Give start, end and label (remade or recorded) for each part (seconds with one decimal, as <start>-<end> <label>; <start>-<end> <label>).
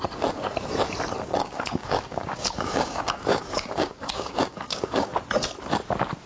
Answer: 0.0-1.3 recorded; 1.3-5.1 remade; 5.1-6.3 recorded